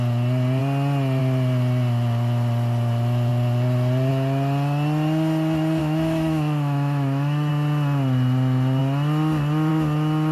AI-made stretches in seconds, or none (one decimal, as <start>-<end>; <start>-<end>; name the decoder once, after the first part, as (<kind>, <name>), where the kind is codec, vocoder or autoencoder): 5.8-7.5 (autoencoder, DAC-VAE)